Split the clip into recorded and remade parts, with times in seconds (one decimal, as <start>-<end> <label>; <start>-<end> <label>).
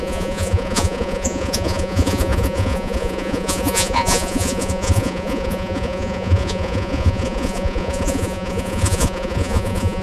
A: 0.0-10.0 remade